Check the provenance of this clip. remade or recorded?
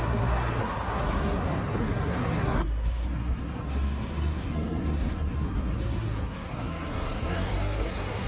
remade